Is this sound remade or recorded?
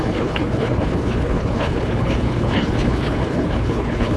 remade